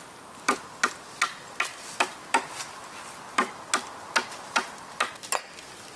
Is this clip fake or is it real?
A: real